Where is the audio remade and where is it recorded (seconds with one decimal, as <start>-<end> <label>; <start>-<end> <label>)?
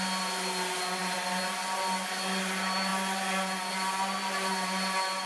0.0-5.3 recorded